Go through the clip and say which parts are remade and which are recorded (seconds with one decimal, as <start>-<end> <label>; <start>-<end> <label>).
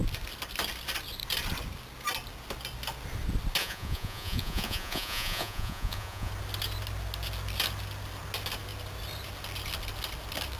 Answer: 0.0-3.6 recorded; 3.6-6.3 remade; 6.3-10.6 recorded